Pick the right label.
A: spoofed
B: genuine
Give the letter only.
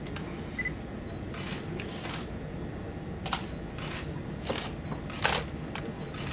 B